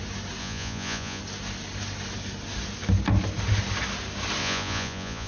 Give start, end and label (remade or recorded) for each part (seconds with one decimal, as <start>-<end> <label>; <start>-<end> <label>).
0.0-0.4 recorded; 0.4-1.2 remade; 1.2-4.4 recorded; 4.4-5.3 remade